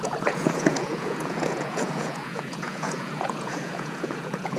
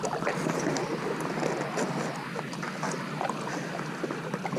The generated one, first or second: first